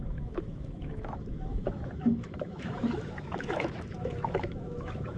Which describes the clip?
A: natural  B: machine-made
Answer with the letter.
B